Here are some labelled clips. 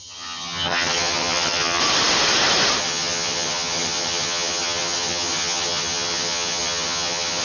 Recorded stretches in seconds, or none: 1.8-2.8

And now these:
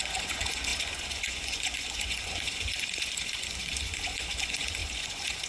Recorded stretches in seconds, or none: none

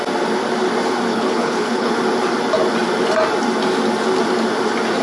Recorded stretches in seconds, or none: 0.0-1.1; 1.9-5.0